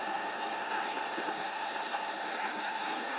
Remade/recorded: remade